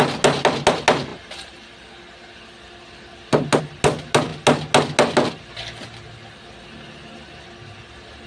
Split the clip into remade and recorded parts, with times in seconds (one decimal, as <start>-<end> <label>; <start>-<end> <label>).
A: 0.0-8.3 recorded